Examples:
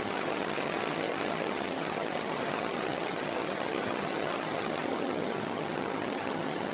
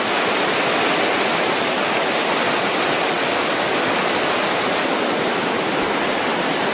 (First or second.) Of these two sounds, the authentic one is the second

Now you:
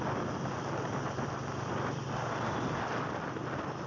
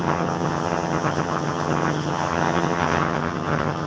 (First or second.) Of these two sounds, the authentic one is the first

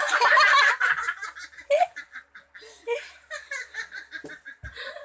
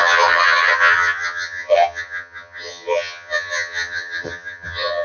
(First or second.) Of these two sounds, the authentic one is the first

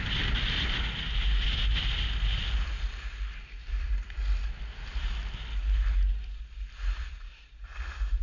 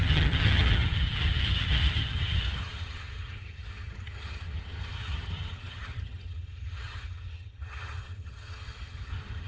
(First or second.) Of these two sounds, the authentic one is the first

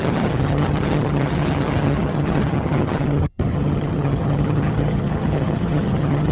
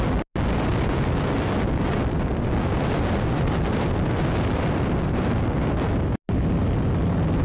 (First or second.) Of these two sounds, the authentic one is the second